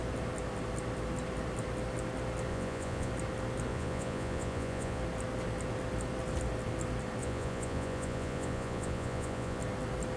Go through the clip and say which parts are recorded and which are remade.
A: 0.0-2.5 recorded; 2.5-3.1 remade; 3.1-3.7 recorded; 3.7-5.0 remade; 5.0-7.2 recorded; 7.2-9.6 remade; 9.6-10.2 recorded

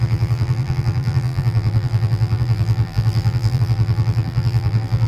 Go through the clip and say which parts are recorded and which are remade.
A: 0.0-5.1 remade

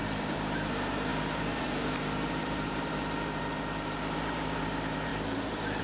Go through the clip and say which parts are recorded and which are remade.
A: 0.0-5.8 remade